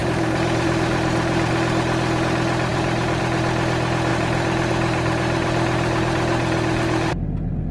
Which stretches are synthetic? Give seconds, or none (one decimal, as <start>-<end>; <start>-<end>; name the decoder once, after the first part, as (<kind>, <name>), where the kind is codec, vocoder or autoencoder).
0.0-1.5 (vocoder, BigVGAN v2); 2.7-3.2; 4.1-7.1